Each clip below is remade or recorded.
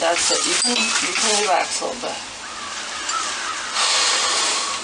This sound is recorded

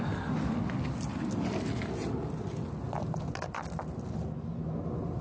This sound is recorded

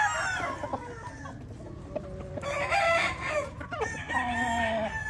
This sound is recorded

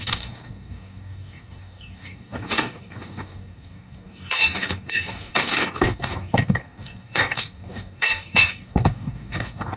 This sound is remade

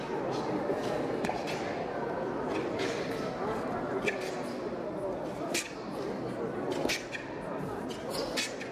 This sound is recorded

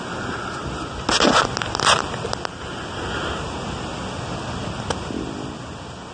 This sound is recorded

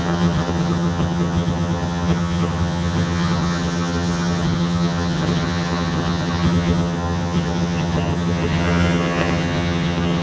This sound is remade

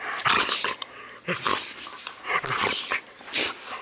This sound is recorded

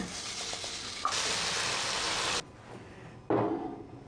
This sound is recorded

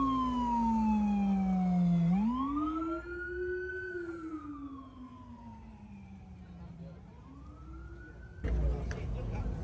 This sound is recorded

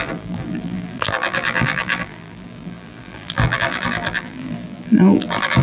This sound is remade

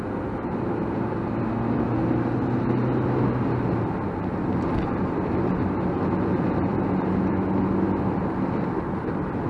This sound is recorded